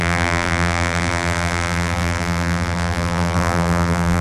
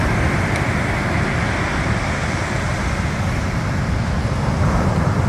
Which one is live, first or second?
second